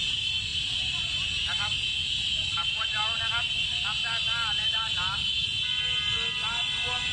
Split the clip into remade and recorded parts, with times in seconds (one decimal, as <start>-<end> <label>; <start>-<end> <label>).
0.0-7.1 recorded